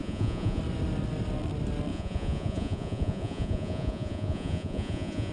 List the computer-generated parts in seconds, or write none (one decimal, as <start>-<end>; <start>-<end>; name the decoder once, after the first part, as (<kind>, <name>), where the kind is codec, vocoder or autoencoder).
0.0-0.6 (vocoder, Vocos); 1.9-5.3